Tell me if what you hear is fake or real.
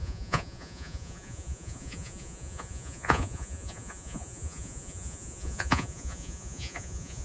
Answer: fake